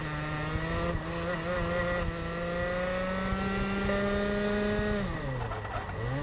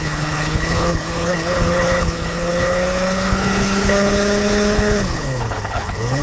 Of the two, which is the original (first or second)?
first